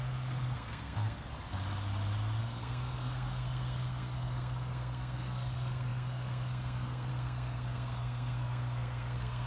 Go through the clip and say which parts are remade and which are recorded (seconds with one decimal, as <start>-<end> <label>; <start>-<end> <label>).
0.0-1.3 remade; 1.3-2.4 recorded; 2.4-9.5 remade